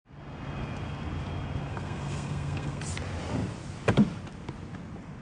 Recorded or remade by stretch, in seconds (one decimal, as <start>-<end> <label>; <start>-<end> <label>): 0.0-1.7 recorded; 1.7-2.8 remade; 2.8-5.2 recorded

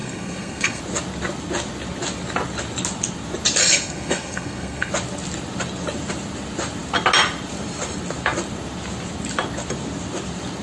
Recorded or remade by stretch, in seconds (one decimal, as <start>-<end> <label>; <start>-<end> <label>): 0.0-0.8 remade; 0.8-3.6 recorded; 3.6-4.9 remade; 4.9-10.6 recorded

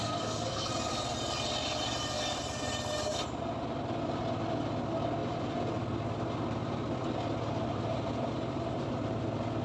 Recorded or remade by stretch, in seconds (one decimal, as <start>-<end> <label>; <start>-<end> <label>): 0.0-0.7 remade; 0.7-9.6 recorded